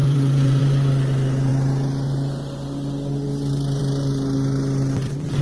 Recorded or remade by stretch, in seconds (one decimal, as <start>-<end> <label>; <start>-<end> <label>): 0.0-0.6 remade; 0.6-5.4 recorded